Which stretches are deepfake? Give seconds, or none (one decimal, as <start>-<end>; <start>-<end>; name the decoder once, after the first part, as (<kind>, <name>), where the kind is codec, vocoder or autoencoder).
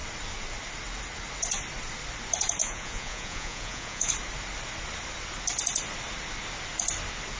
2.6-4.1 (vocoder, Vocos)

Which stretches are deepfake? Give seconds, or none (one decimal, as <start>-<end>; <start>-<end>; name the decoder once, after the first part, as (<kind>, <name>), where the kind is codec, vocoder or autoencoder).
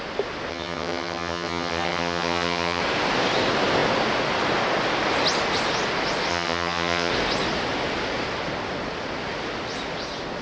0.5-2.8 (vocoder, HiFi-GAN); 6.3-7.1